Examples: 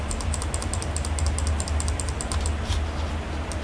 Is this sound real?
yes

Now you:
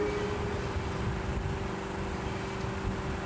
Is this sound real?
yes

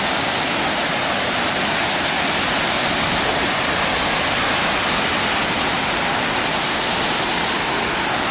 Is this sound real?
yes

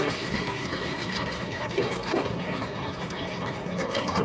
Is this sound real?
no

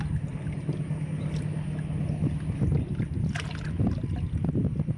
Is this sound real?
yes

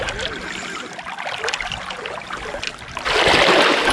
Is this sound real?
yes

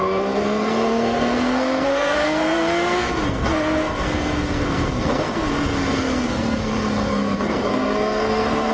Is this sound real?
no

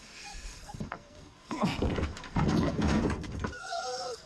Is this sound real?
no